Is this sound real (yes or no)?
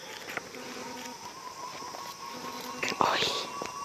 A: yes